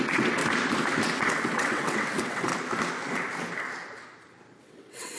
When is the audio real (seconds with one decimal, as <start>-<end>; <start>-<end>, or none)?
0.4-1.2; 2.5-4.6